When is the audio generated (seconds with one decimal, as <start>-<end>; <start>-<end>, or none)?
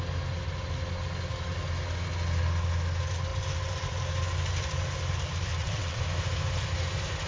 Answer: 5.5-6.0